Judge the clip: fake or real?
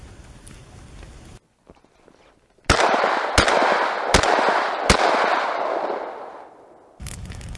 real